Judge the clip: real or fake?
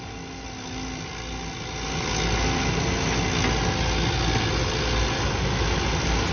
real